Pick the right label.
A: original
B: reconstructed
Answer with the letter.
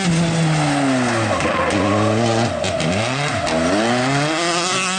A